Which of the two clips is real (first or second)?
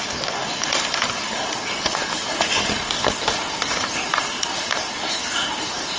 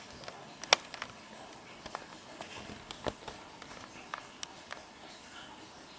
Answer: second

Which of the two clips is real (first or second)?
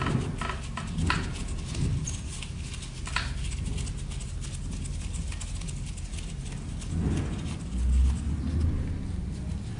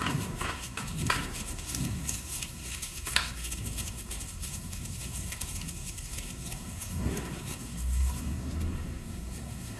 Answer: first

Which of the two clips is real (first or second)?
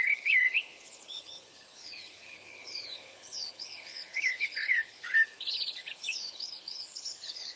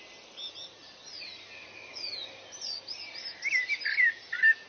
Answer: second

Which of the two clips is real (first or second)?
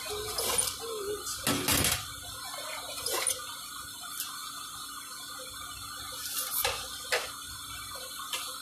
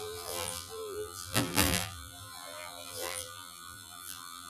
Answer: first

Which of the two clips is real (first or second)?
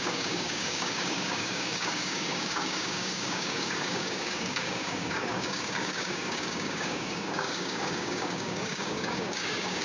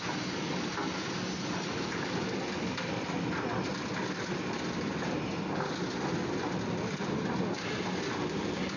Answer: second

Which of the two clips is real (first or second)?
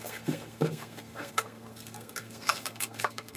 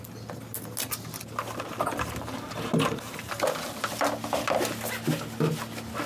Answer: second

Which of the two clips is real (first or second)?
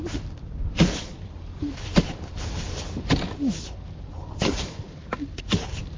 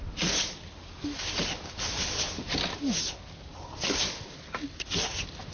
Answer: second